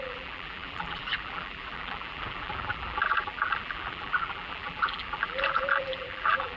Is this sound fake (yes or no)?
yes